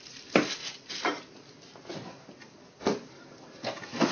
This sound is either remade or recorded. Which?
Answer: recorded